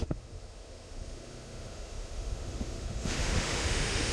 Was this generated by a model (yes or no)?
yes